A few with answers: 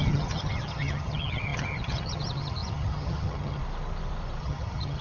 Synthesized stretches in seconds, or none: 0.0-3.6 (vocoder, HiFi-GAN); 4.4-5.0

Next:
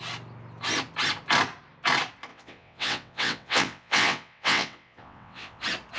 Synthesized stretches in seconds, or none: 2.3-5.6 (vocoder, WaveNeXt)

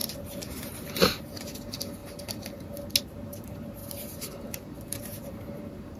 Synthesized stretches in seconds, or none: 0.0-2.0 (vocoder, BigVGAN v2); 3.0-6.0

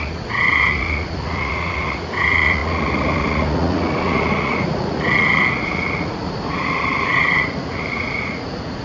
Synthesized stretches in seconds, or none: 0.0-8.8 (vocoder, Vocos)

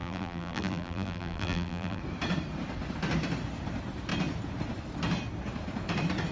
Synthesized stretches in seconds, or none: 0.0-2.0 (vocoder, BigVGAN v2)

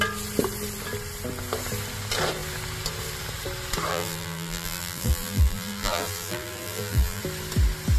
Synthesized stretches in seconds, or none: 3.9-7.2 (vocoder, BigVGAN v2)